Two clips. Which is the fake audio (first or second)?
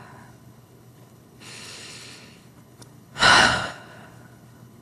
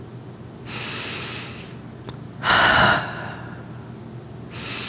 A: first